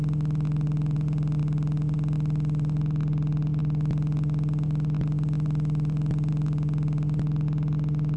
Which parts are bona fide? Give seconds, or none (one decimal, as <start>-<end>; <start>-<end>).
0.0-8.2